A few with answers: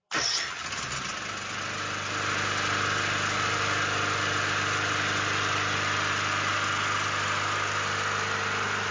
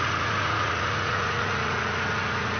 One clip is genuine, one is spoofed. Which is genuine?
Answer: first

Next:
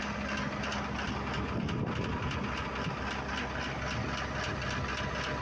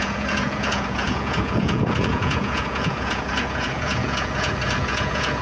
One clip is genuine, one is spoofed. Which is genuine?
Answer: first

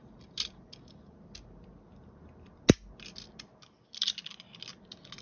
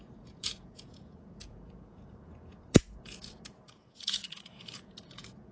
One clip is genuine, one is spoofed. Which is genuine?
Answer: first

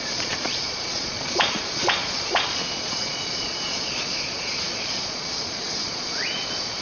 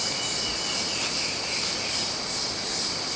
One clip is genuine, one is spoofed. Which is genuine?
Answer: second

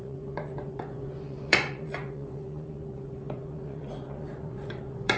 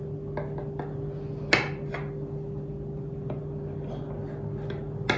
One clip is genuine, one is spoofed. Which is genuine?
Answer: second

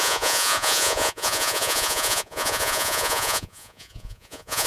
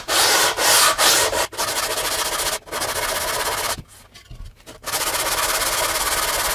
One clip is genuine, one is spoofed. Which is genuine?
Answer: second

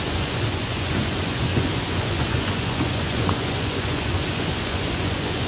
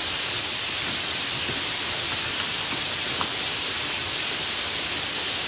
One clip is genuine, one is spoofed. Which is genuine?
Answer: second